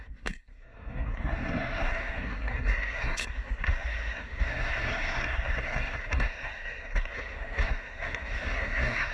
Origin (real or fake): fake